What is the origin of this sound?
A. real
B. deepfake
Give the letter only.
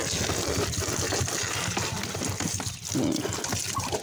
A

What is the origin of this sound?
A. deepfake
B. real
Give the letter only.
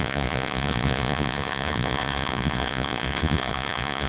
A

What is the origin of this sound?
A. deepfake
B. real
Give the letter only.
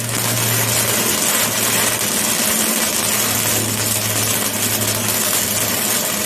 B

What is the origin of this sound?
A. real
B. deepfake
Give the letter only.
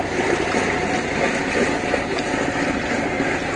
A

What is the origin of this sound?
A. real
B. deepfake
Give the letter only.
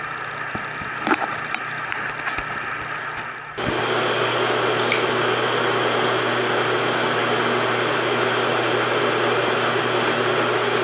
A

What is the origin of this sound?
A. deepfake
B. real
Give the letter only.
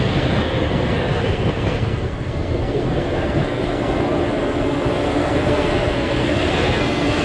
A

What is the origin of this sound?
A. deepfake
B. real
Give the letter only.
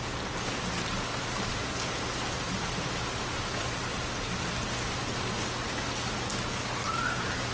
B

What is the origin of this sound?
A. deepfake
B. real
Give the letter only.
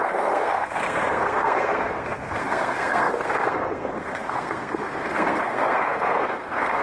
A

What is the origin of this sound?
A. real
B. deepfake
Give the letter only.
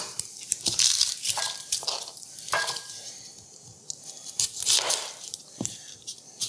B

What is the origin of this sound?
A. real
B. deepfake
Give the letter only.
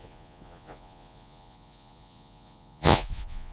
B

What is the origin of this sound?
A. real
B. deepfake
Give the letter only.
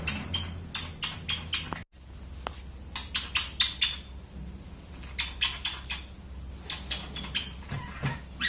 A